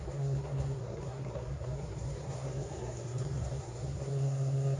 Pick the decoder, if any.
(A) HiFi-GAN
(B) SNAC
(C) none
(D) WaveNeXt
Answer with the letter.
B